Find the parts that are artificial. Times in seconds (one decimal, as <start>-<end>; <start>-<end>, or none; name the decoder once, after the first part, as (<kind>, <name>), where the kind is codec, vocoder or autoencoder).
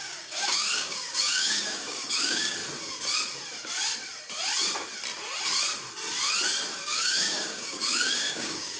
0.0-2.6 (codec, DAC); 6.8-8.8